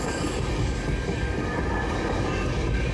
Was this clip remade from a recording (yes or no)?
yes